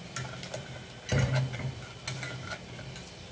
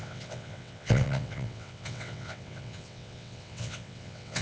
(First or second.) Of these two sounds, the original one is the first